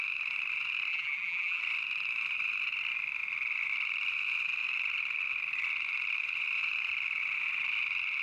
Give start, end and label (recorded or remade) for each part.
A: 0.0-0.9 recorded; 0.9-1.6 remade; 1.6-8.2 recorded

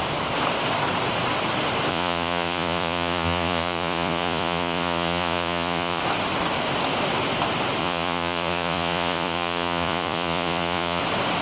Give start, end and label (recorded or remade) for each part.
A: 0.0-1.9 recorded; 1.9-6.0 remade; 6.0-7.8 recorded; 7.8-11.0 remade; 11.0-11.4 recorded

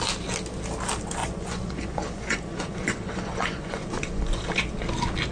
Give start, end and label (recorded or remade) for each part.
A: 0.0-1.2 recorded; 1.2-4.4 remade; 4.4-5.3 recorded

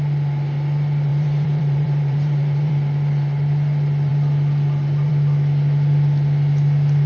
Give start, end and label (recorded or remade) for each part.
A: 0.0-1.1 recorded; 1.1-2.7 remade; 2.7-7.1 recorded

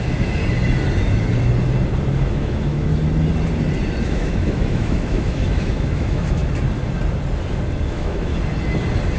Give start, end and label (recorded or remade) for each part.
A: 0.0-0.4 remade; 0.4-2.2 recorded; 2.2-2.9 remade; 2.9-4.0 recorded; 4.0-6.4 remade; 6.4-7.9 recorded; 7.9-8.3 remade; 8.3-9.2 recorded

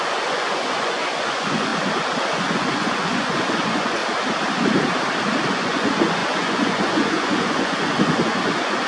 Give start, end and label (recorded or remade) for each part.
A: 0.0-1.7 remade; 1.7-2.3 recorded; 2.3-4.0 remade; 4.0-5.5 recorded; 5.5-8.9 remade